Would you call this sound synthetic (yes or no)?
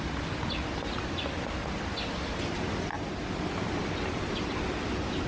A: no